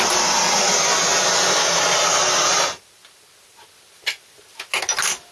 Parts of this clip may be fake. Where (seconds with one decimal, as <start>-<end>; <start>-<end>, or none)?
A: none